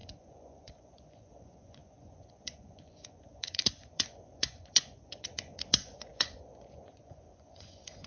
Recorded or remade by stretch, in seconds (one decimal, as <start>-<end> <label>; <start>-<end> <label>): 0.0-8.1 remade